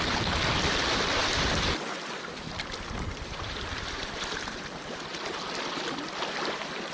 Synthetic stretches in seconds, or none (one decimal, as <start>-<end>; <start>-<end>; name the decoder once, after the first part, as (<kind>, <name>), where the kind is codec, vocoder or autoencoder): none